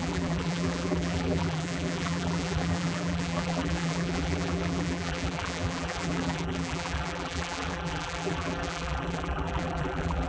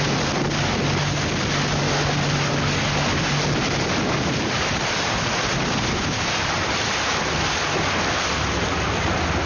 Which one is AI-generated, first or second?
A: first